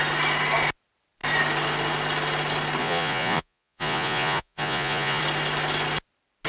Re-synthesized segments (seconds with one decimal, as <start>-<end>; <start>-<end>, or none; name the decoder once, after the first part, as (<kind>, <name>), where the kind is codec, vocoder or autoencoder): 2.8-5.2 (vocoder, Vocos)